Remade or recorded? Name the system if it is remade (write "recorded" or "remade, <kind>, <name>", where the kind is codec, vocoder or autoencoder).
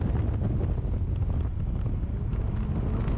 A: recorded